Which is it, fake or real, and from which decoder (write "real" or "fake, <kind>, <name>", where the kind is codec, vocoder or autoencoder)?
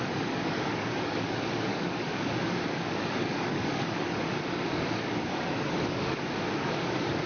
fake, codec, DAC